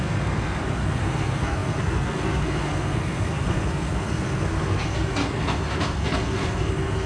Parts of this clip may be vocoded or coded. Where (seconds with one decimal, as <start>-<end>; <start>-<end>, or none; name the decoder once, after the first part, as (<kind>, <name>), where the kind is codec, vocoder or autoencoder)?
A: 0.0-7.1 (codec, SNAC)